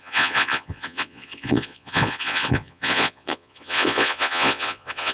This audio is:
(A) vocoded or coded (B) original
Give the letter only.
A